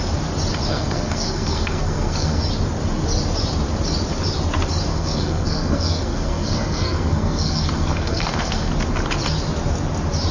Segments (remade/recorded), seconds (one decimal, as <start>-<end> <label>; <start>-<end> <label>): 0.0-0.7 recorded; 0.7-2.4 remade; 2.4-4.9 recorded; 4.9-8.7 remade; 8.7-10.3 recorded